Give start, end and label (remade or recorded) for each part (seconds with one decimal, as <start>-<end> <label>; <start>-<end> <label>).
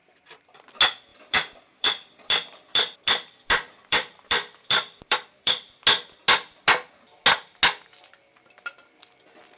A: 0.0-1.1 recorded; 1.1-5.5 remade; 5.5-9.6 recorded